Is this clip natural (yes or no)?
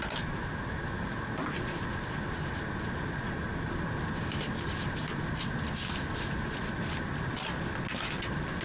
yes